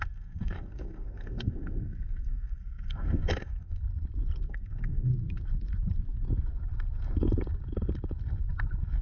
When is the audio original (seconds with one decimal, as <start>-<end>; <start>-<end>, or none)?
3.8-4.5; 5.1-9.0